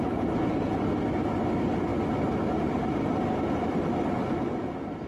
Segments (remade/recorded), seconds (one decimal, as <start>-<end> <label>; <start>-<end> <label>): 0.0-5.1 recorded